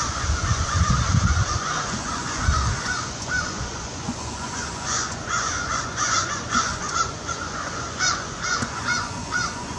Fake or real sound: fake